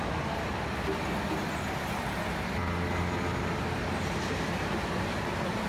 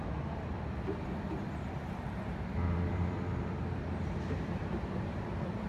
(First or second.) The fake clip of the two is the second